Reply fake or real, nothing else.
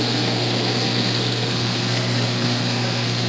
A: fake